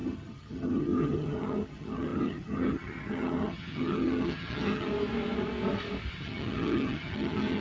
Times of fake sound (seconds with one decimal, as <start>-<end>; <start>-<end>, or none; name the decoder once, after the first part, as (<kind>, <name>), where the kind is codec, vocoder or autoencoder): 0.0-4.9 (vocoder, HiFi-GAN); 6.1-7.6